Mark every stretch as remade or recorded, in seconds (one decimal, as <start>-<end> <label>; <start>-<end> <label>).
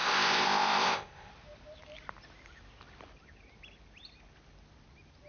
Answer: 0.0-1.3 remade; 1.3-5.3 recorded